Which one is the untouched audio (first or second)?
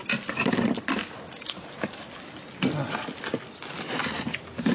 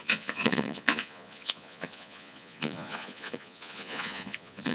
first